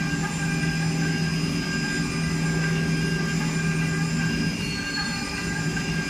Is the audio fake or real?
real